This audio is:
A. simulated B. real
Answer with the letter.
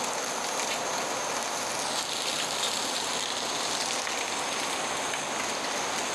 B